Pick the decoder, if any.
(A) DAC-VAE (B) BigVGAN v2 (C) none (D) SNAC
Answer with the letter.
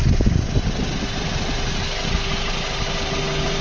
C